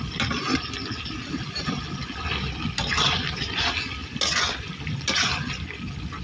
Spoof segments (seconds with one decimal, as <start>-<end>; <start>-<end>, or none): none